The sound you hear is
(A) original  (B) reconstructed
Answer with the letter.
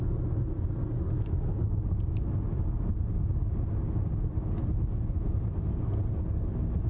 A